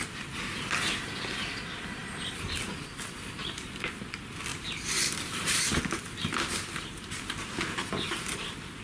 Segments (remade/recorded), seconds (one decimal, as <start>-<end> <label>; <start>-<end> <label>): 0.0-2.0 recorded; 2.0-2.7 remade; 2.7-4.5 recorded; 4.5-5.8 remade; 5.8-8.8 recorded